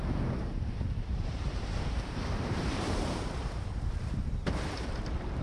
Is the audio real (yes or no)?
no